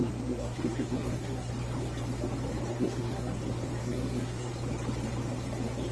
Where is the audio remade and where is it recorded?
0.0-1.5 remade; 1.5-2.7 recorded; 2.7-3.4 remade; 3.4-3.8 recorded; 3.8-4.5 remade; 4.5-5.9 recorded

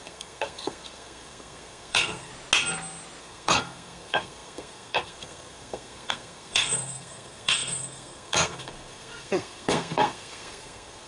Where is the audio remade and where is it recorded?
0.0-2.3 remade; 2.3-3.2 recorded; 3.2-11.1 remade